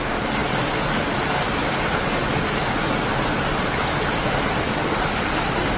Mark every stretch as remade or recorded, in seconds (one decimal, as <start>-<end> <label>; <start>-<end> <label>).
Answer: 0.0-5.8 recorded